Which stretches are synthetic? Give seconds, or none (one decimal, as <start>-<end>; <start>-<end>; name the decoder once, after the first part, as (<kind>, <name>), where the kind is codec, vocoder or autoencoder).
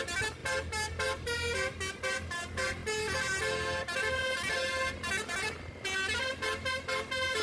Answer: none